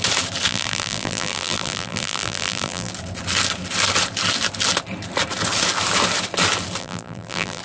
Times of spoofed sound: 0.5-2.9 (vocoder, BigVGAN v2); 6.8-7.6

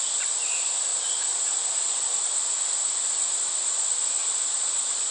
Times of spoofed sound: 4.2-5.1 (vocoder, BigVGAN v2)

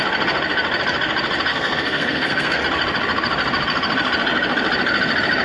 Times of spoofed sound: 1.5-2.6 (codec, SNAC)